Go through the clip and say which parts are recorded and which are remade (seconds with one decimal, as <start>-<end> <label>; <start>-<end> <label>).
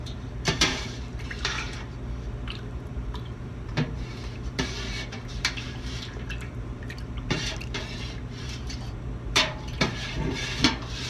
0.0-11.1 remade